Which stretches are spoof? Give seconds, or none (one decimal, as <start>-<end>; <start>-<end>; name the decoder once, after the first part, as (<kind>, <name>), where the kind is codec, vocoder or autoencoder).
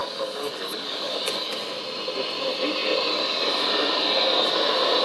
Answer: 0.0-1.6 (codec, DAC)